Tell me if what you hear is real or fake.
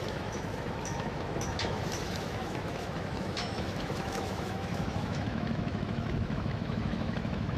fake